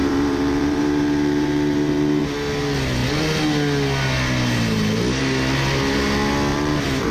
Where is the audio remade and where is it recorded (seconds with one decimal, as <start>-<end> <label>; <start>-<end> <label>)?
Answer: 0.0-2.2 remade; 2.2-6.5 recorded; 6.5-7.1 remade